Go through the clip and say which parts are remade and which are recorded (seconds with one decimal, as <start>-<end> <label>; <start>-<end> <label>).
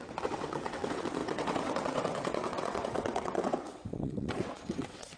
0.0-5.2 remade